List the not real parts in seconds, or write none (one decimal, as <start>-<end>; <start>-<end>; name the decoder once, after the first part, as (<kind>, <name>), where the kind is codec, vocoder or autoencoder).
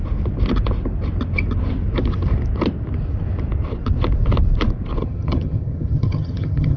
5.0-6.8 (vocoder, HiFi-GAN)